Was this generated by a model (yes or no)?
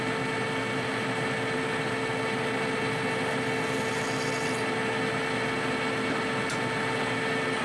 no